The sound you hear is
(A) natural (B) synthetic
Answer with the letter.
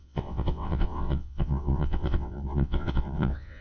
B